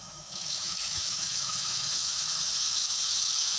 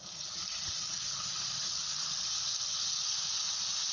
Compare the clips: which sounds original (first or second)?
second